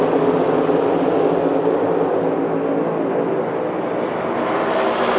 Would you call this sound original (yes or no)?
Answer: yes